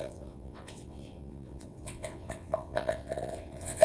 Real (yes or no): no